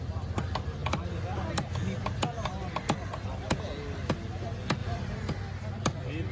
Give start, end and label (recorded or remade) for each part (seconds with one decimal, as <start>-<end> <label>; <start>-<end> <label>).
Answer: 0.0-6.3 recorded